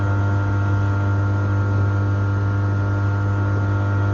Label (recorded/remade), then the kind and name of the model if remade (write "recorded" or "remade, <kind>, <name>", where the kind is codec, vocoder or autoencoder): recorded